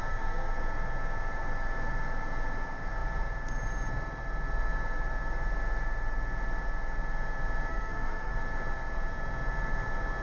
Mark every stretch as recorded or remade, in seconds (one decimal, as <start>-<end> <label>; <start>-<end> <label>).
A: 0.0-0.5 remade; 0.5-7.7 recorded; 7.7-8.3 remade; 8.3-10.2 recorded